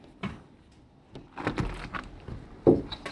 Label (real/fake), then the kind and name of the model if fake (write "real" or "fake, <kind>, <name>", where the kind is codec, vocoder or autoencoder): real